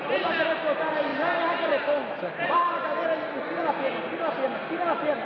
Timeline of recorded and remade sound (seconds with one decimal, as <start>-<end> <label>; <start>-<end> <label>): 0.0-5.2 recorded